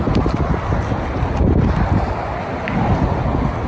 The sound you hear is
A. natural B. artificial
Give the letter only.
A